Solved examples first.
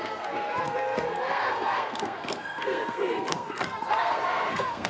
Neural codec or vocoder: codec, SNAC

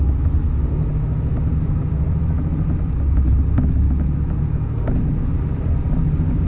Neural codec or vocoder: none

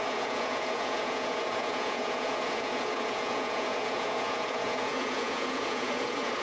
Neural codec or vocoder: vocoder, Vocos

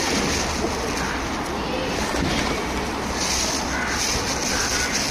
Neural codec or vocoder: none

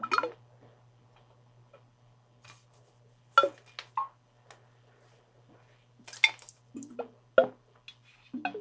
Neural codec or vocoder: none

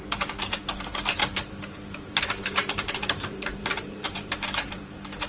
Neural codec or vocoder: vocoder, BigVGAN v2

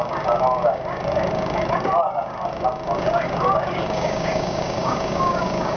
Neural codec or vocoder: codec, DAC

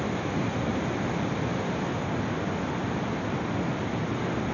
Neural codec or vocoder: none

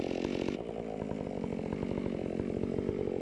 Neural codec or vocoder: none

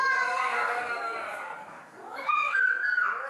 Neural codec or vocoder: codec, DAC